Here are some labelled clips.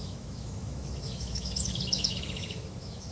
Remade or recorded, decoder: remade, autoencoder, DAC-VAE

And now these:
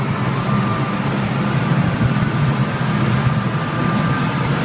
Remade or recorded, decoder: recorded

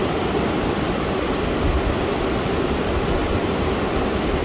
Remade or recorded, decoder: recorded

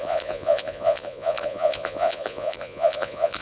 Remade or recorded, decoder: remade, vocoder, Vocos